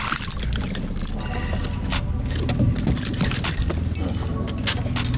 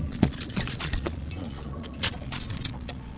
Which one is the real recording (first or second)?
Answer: first